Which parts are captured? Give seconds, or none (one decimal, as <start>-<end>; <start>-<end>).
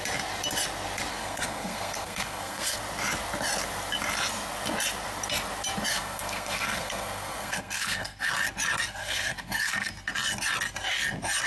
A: 0.0-1.1; 2.8-5.9; 8.3-9.0; 9.9-11.5